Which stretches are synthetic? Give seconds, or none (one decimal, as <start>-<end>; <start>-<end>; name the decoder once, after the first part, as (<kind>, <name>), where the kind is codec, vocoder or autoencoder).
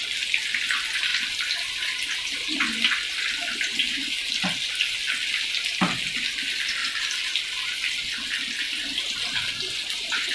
none